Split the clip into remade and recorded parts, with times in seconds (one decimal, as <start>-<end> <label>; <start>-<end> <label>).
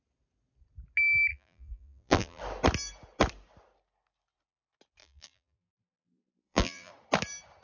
0.0-1.3 recorded; 1.3-2.4 remade; 2.4-5.0 recorded; 5.0-6.9 remade; 6.9-7.6 recorded